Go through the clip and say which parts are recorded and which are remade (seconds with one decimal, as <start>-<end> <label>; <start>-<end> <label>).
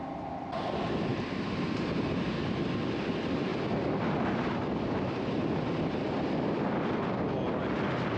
0.0-8.2 recorded